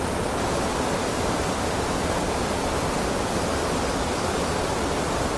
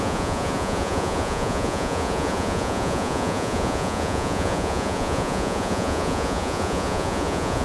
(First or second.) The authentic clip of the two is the first